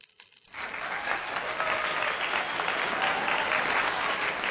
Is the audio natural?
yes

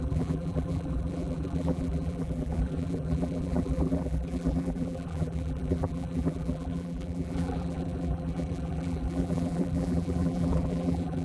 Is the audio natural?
no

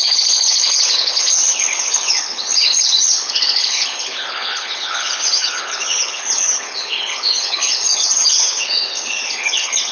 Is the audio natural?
no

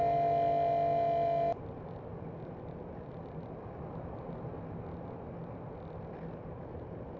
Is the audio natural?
yes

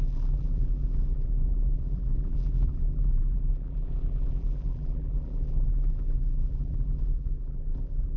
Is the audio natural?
no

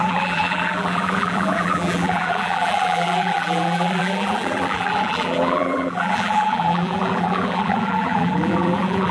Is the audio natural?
no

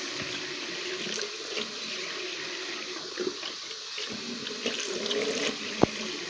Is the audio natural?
yes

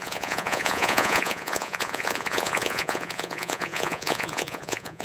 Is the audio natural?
no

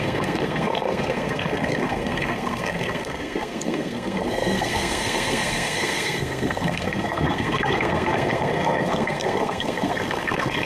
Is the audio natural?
no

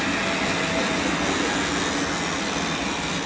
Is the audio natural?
yes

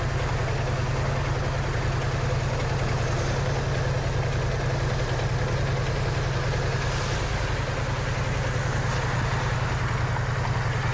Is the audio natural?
yes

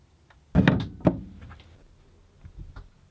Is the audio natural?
yes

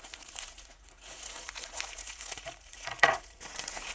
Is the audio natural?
no